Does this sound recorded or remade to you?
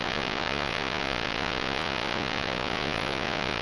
remade